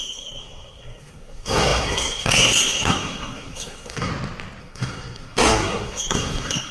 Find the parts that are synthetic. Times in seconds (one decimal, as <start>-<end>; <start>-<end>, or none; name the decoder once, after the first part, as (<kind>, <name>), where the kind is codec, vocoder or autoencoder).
0.0-4.1 (codec, SNAC); 4.6-6.7